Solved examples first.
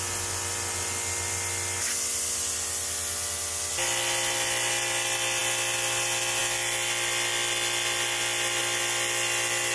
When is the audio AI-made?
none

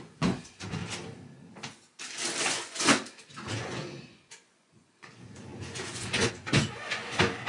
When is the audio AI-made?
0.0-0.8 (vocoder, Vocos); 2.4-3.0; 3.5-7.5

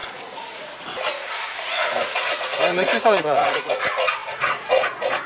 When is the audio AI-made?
0.0-5.3 (vocoder, Vocos)

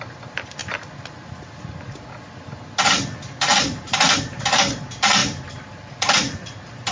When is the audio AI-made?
3.5-4.4 (vocoder, BigVGAN v2); 5.2-6.5

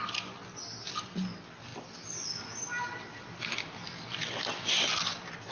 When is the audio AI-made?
1.7-5.0 (vocoder, BigVGAN v2)

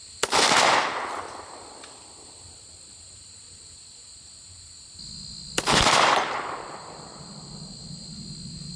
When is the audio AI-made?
none